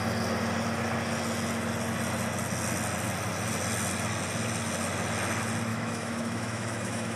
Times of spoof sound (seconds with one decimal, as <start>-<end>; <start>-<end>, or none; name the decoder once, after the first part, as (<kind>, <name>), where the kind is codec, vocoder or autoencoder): 5.7-7.2 (autoencoder, DAC-VAE)

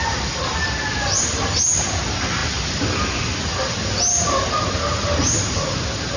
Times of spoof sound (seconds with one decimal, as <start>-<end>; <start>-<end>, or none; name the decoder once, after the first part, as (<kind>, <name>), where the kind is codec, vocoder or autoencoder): none

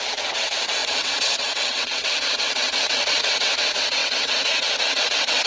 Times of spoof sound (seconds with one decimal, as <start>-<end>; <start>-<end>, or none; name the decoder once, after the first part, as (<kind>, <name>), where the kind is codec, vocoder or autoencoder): 0.0-5.5 (vocoder, WaveNeXt)

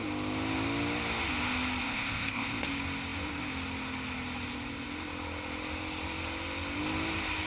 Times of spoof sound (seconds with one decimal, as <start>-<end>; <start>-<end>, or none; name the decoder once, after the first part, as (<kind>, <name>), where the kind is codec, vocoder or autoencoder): 1.8-2.6 (codec, ZipCodec)

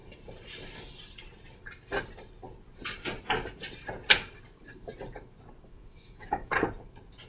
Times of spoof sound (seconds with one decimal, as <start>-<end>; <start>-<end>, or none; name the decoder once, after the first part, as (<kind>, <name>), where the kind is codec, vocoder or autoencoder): 5.7-6.5 (autoencoder, DAC-VAE)

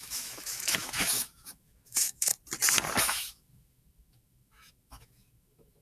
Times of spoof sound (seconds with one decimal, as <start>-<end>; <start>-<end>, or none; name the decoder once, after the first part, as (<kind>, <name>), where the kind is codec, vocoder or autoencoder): 0.0-2.3 (autoencoder, DAC-VAE); 3.0-5.8

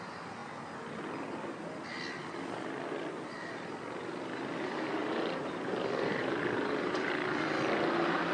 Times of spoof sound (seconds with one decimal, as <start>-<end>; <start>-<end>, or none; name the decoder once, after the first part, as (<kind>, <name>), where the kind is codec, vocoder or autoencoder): 5.0-5.8 (vocoder, BigVGAN v2); 6.2-7.3